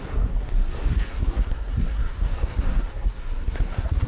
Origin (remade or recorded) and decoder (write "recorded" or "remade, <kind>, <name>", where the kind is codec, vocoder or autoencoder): remade, codec, SNAC